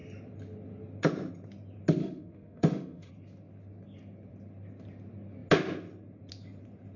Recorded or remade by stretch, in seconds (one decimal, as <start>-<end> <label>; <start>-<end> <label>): 0.0-2.0 recorded; 2.0-3.1 remade; 3.1-7.0 recorded